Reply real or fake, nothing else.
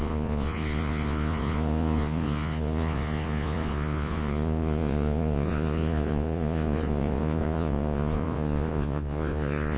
fake